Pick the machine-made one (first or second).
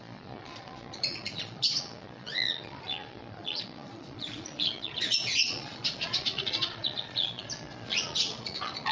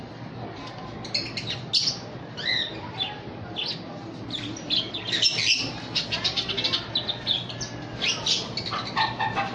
first